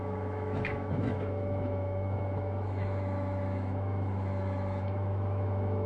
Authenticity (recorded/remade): remade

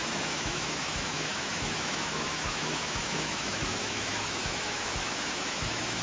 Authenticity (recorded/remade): remade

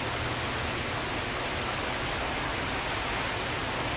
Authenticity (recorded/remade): recorded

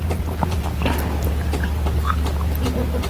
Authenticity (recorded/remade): recorded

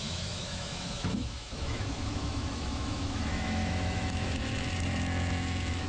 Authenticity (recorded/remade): remade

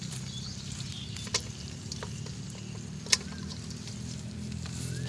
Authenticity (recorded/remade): recorded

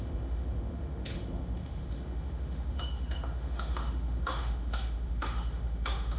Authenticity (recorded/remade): remade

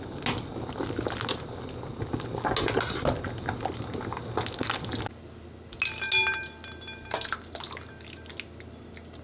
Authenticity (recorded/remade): recorded